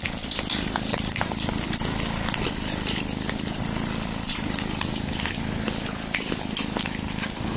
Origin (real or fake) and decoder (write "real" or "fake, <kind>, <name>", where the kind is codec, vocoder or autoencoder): real